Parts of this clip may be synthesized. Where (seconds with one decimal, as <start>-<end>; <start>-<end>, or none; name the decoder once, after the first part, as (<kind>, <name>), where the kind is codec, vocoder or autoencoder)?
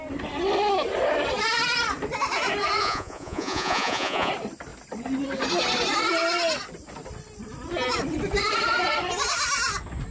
2.8-4.3 (vocoder, Vocos)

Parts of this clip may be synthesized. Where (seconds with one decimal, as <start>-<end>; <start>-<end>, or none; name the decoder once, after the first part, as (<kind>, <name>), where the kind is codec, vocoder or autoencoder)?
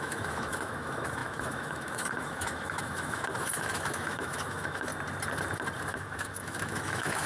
0.0-4.9 (autoencoder, DAC-VAE); 5.9-7.3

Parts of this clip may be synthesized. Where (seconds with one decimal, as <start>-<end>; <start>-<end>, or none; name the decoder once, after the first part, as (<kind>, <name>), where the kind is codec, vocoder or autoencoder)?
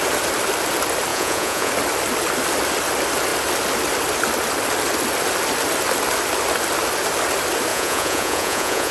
1.1-1.7 (vocoder, Vocos); 7.7-8.9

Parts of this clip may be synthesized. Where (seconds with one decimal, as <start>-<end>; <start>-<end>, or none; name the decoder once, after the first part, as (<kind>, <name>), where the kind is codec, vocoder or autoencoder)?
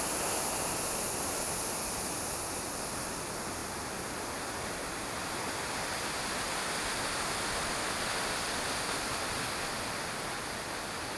none